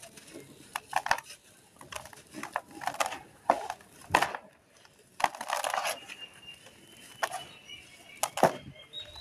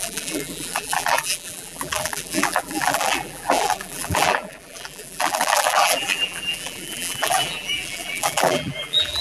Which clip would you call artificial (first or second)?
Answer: second